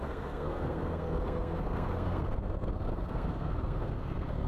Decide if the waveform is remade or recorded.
remade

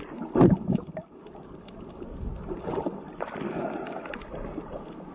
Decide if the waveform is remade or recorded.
recorded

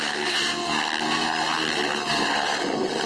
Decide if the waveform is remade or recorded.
recorded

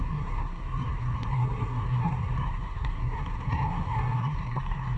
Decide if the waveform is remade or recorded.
remade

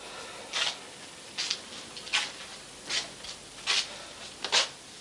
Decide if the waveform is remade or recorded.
recorded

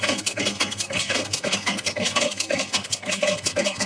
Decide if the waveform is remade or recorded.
remade